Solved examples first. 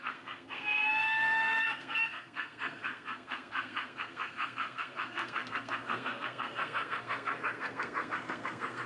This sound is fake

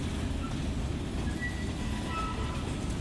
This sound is real